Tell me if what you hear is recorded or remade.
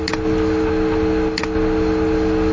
recorded